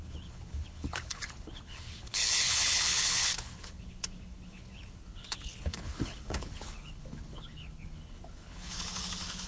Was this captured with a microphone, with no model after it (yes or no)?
no